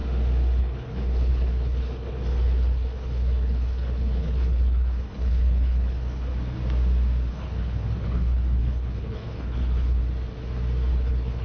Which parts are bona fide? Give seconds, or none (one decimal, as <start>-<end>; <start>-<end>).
0.0-0.6; 6.3-7.3; 10.0-10.9